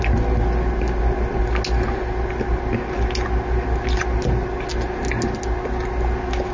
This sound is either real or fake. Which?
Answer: real